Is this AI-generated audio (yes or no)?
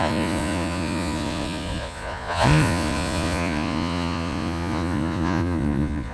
yes